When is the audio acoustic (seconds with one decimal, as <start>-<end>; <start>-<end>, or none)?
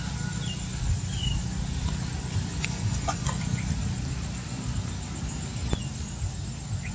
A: 0.0-2.5; 3.4-6.9